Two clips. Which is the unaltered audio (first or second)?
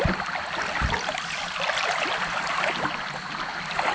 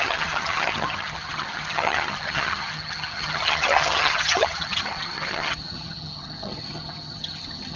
first